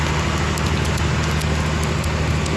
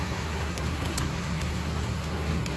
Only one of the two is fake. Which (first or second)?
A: second